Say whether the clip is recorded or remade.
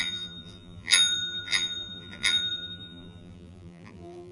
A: remade